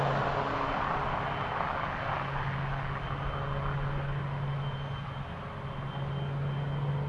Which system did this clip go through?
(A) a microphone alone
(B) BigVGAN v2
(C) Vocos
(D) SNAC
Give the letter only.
A